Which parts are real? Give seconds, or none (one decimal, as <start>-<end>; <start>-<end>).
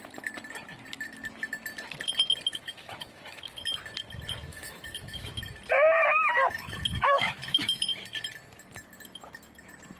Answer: 0.0-2.5; 3.6-4.5; 5.4-6.0; 8.0-10.0